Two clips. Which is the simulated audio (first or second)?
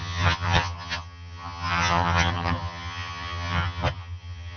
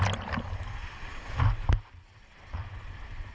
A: first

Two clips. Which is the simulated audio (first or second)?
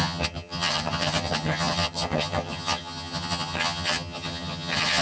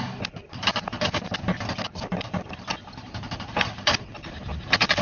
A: first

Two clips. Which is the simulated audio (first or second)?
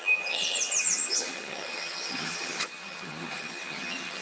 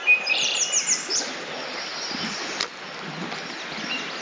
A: first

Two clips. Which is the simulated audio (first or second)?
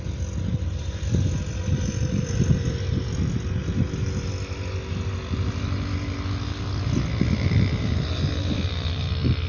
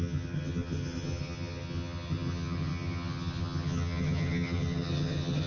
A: second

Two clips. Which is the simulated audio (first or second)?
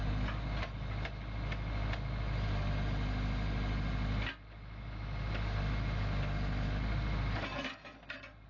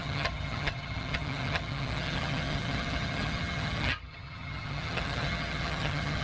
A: second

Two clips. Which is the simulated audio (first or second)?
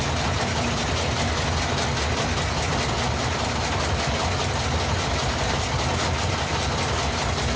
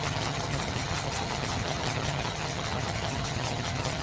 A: second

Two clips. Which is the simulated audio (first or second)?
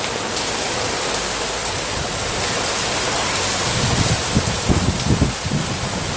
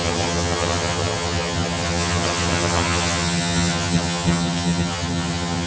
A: second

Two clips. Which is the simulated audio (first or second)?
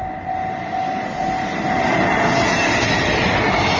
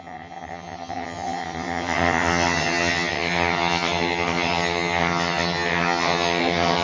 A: second